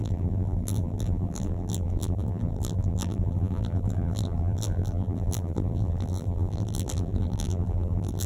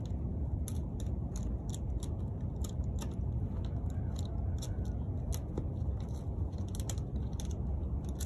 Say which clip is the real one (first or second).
second